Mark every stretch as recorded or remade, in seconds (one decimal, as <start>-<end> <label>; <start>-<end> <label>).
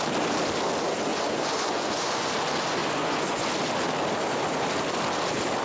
0.0-1.1 recorded; 1.1-2.3 remade; 2.3-2.8 recorded; 2.8-3.5 remade; 3.5-5.6 recorded